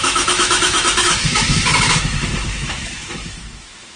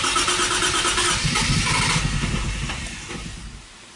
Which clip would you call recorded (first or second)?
second